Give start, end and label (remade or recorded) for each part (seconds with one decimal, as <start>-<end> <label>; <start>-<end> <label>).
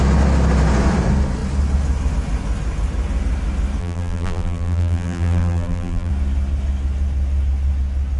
0.0-3.8 recorded; 3.8-6.1 remade; 6.1-8.2 recorded